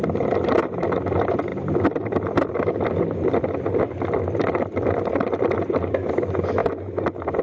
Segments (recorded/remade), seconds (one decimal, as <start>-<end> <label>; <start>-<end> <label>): 0.0-7.4 remade

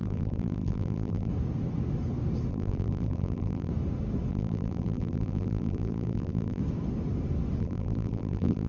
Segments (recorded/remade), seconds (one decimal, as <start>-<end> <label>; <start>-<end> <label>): 0.0-1.3 remade; 1.3-2.5 recorded; 2.5-3.7 remade; 3.7-4.3 recorded; 4.3-6.6 remade; 6.6-7.6 recorded; 7.6-8.7 remade

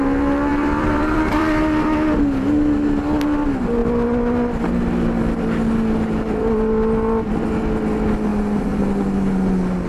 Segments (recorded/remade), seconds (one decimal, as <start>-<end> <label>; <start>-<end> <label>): 0.0-0.5 recorded; 0.5-1.6 remade; 1.6-8.3 recorded; 8.3-8.8 remade; 8.8-9.9 recorded

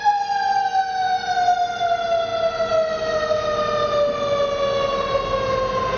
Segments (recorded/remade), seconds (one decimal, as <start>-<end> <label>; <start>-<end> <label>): 0.0-6.0 recorded

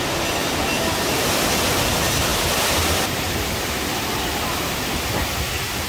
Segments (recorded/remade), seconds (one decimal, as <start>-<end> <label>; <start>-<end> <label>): 0.0-2.3 recorded; 2.3-4.0 remade; 4.0-5.9 recorded

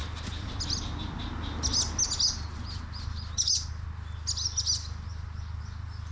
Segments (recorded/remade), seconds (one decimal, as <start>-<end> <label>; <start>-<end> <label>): 0.0-6.1 recorded

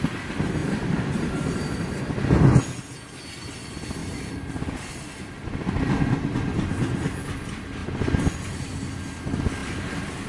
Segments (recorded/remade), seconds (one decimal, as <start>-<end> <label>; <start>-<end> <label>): 0.0-0.6 recorded; 0.6-2.0 remade; 2.0-4.0 recorded; 4.0-5.1 remade; 5.1-10.3 recorded